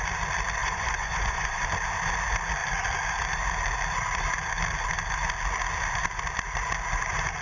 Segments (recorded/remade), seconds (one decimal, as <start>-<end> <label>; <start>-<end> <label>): 0.0-0.6 recorded; 0.6-1.6 remade; 1.6-7.4 recorded